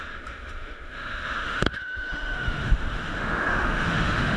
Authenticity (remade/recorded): remade